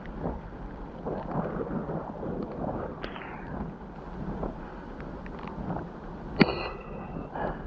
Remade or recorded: recorded